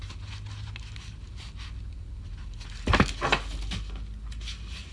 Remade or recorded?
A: recorded